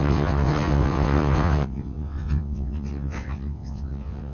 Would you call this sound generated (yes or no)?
yes